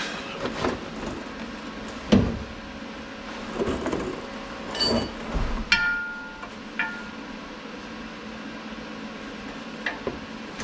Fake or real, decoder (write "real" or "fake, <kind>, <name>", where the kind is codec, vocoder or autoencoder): real